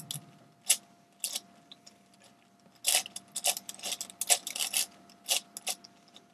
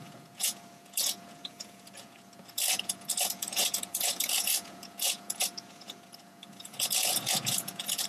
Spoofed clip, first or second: second